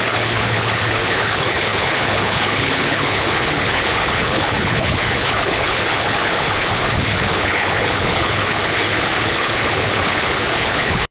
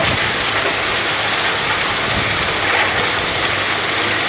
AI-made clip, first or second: first